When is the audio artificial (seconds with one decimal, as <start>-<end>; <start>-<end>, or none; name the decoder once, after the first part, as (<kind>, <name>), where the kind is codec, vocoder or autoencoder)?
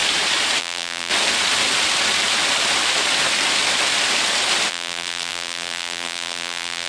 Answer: 0.6-1.1 (vocoder, BigVGAN v2); 4.7-6.9